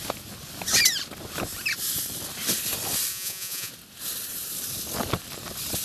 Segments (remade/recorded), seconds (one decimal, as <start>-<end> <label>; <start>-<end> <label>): 0.0-3.1 recorded; 3.1-3.7 remade; 3.7-5.8 recorded